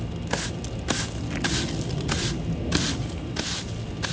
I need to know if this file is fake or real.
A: real